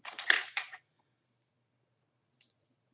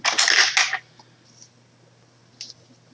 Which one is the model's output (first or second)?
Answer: first